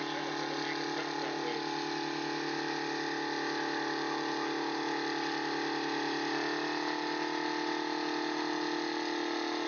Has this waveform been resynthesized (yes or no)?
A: no